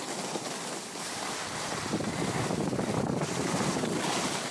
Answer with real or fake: real